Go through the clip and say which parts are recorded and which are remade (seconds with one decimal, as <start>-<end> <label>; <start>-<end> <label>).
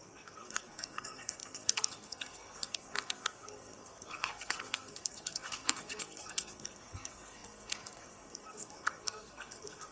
0.0-9.9 remade